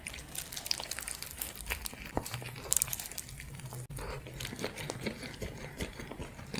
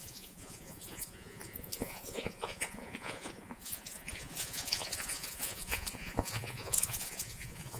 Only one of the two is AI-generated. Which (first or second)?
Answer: second